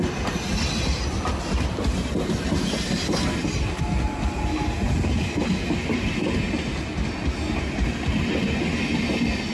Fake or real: real